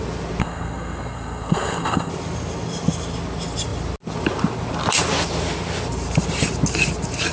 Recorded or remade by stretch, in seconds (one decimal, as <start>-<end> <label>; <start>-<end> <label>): 0.0-0.4 recorded; 0.4-2.1 remade; 2.1-7.3 recorded